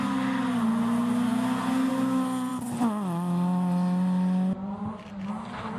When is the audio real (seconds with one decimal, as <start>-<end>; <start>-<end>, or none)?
0.0-5.8